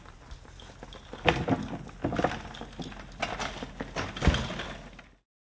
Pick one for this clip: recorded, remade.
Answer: recorded